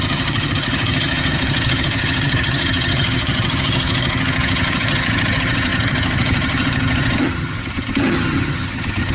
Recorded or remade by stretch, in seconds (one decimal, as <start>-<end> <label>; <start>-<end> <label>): 0.0-9.1 remade